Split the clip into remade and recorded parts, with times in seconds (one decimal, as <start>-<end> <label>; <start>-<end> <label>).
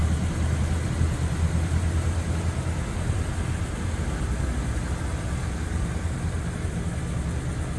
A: 0.0-7.8 recorded